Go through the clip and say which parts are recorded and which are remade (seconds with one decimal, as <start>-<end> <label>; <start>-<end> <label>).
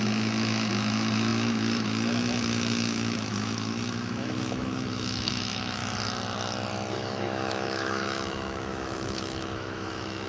0.0-5.8 remade; 5.8-6.9 recorded; 6.9-10.3 remade